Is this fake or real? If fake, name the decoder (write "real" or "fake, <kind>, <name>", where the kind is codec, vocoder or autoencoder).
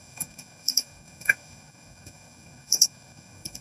fake, codec, DAC